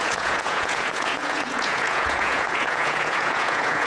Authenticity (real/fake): fake